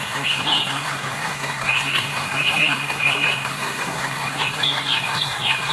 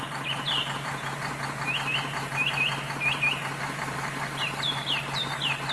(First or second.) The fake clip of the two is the first